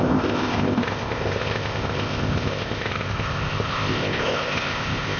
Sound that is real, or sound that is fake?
fake